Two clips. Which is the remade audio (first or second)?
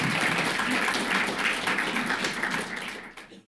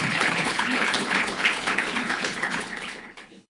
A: second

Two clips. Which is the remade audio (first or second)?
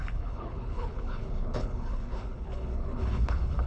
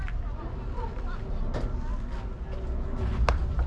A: first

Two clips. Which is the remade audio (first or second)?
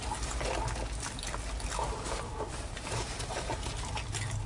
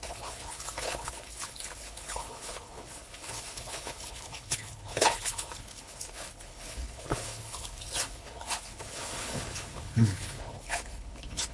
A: second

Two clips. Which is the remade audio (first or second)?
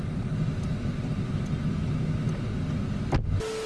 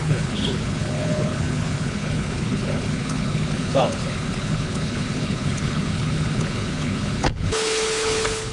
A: second